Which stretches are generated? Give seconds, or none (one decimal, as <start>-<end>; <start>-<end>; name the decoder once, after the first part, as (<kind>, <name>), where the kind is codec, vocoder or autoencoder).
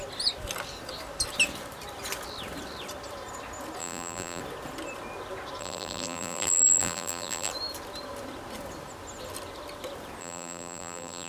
3.8-4.4 (vocoder, BigVGAN v2); 5.6-7.5; 10.2-11.3